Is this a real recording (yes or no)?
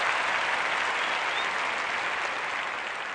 yes